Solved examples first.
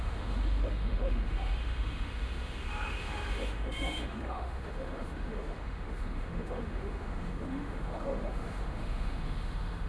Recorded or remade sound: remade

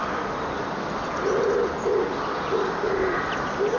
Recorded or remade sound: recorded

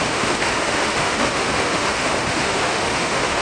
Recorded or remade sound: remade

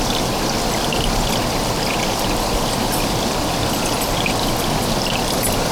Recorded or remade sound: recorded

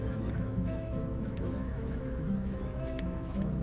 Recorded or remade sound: remade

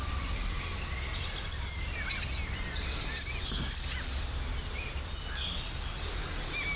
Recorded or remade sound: recorded